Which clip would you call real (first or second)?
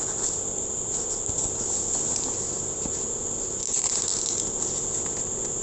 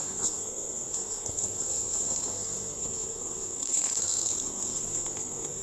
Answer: first